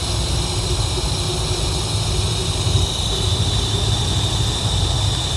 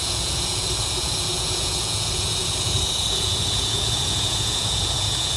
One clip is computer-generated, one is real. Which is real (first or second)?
first